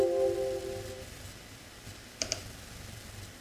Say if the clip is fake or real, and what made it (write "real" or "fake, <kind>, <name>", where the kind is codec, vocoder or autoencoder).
real